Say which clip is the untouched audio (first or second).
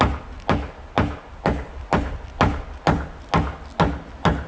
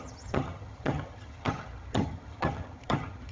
first